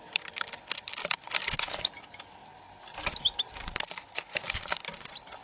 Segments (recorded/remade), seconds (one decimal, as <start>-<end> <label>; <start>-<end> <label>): 0.0-1.0 remade; 1.0-4.2 recorded; 4.2-5.4 remade